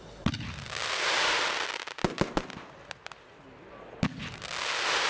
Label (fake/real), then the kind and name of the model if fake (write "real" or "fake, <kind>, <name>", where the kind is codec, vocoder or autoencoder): real